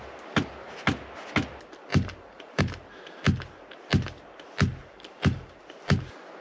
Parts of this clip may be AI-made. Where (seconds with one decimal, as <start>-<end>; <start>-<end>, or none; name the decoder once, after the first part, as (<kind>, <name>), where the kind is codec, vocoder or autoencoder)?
1.9-2.6 (vocoder, BigVGAN v2); 4.8-5.6